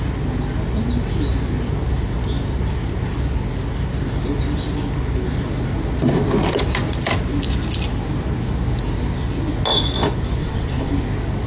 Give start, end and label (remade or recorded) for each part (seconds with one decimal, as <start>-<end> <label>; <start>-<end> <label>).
0.0-10.4 recorded; 10.4-10.9 remade; 10.9-11.5 recorded